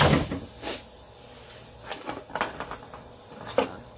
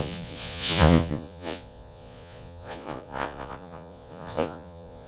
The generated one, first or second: second